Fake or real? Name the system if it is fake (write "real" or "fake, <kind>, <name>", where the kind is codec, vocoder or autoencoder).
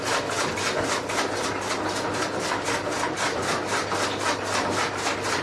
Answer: real